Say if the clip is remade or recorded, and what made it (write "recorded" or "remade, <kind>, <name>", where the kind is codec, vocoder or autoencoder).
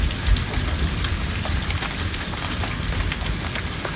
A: recorded